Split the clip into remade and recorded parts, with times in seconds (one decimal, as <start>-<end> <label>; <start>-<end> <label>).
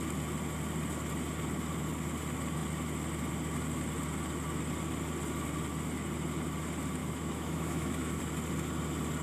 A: 0.0-7.0 recorded; 7.0-8.2 remade; 8.2-9.2 recorded